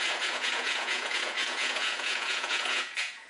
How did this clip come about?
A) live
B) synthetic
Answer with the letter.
B